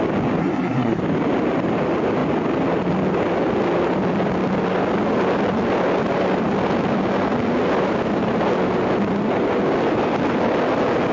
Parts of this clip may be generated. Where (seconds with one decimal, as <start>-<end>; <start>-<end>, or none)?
0.4-1.0